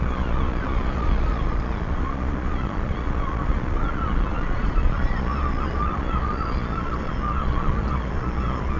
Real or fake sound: fake